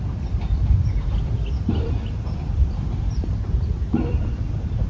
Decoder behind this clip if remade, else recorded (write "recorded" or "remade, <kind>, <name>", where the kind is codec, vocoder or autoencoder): remade, vocoder, BigVGAN v2